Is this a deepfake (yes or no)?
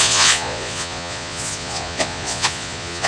yes